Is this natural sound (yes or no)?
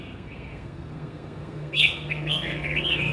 no